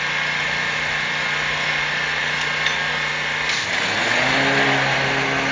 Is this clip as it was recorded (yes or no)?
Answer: yes